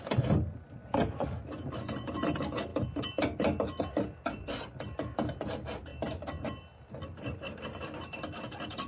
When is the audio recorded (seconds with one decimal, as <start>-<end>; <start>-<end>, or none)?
0.0-8.9